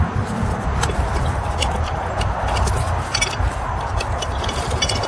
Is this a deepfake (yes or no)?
no